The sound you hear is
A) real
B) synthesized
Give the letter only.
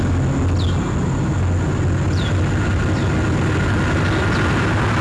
A